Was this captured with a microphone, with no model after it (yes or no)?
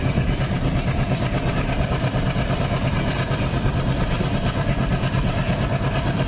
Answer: yes